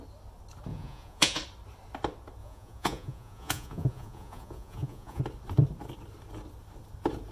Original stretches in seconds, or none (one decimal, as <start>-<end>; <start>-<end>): 0.0-0.7; 1.4-2.4; 5.2-7.3